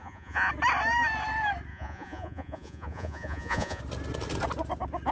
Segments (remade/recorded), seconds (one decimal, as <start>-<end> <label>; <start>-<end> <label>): 0.0-0.5 remade; 0.5-1.7 recorded; 1.7-3.8 remade; 3.8-5.1 recorded